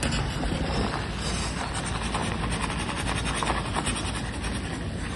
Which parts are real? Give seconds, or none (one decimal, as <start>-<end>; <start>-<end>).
0.0-5.2